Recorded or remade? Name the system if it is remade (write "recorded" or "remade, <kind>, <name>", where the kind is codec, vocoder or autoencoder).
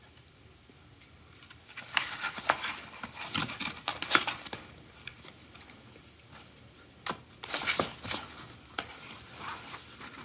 recorded